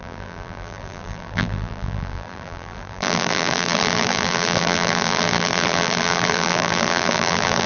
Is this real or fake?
fake